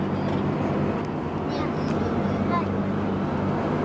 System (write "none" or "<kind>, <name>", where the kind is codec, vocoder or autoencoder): none